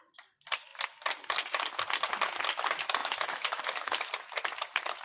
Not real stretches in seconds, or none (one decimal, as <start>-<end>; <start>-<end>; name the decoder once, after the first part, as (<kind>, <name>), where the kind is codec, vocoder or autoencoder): 3.0-4.1 (autoencoder, DAC-VAE)